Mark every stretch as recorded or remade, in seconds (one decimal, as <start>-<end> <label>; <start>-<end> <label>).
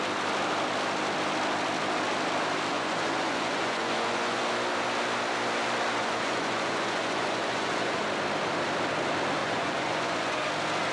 0.0-2.7 recorded; 2.7-4.4 remade; 4.4-6.0 recorded; 6.0-8.0 remade; 8.0-9.4 recorded; 9.4-10.5 remade; 10.5-10.9 recorded